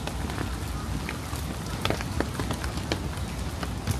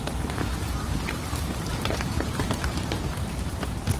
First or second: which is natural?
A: first